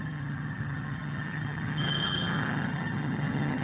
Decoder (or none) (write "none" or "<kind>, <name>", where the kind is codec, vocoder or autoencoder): vocoder, HiFi-GAN